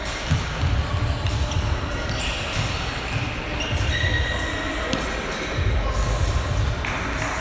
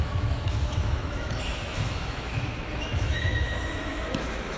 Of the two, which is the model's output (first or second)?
second